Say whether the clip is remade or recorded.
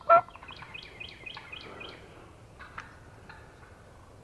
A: recorded